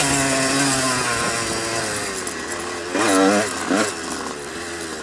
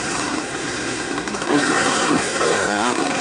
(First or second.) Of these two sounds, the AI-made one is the second